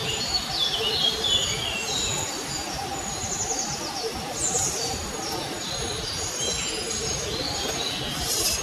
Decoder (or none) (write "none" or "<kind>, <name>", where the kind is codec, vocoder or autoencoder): none